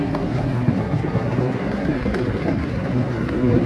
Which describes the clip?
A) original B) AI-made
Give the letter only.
B